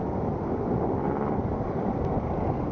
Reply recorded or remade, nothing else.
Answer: recorded